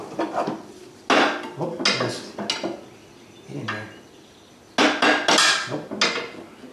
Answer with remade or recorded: recorded